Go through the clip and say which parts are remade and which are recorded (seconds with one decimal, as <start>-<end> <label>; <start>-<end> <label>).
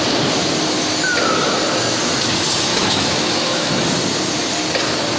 0.0-2.7 recorded; 2.7-3.7 remade; 3.7-5.2 recorded